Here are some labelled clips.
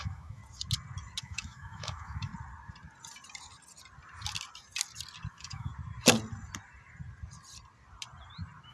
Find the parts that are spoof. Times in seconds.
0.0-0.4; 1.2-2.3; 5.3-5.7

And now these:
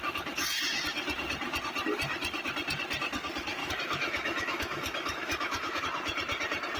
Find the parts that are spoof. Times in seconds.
3.6-5.8

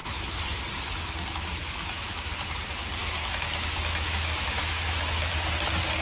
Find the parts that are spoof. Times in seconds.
0.0-0.6; 1.6-2.3; 3.0-5.3